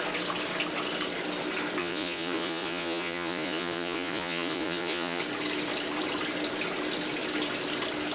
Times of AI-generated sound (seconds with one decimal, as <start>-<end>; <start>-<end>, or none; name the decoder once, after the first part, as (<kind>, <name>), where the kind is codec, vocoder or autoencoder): 1.8-5.2 (vocoder, Vocos)